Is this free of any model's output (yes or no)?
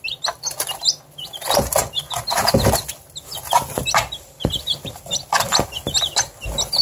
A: yes